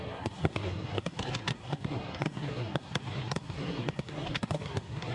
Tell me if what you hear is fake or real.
fake